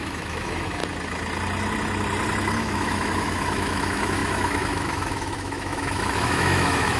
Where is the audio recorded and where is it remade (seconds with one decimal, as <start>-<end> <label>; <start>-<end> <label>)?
0.0-0.8 remade; 0.8-2.6 recorded; 2.6-7.0 remade